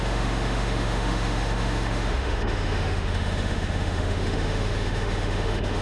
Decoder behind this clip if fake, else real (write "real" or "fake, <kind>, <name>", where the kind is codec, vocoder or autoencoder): fake, autoencoder, DAC-VAE